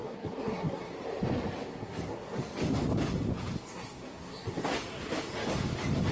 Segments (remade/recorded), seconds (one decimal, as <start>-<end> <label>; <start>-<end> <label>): 0.0-0.9 remade; 0.9-1.7 recorded; 1.7-2.4 remade; 2.4-3.7 recorded; 3.7-4.7 remade; 4.7-6.1 recorded